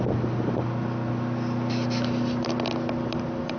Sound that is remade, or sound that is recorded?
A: recorded